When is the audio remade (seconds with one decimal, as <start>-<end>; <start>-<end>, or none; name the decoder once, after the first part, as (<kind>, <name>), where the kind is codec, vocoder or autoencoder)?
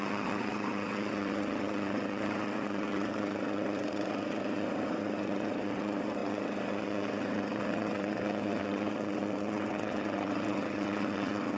0.0-11.6 (vocoder, WaveNeXt)